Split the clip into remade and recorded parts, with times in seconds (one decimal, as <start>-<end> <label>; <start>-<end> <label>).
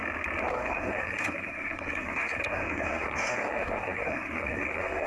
0.0-0.5 recorded; 0.5-5.1 remade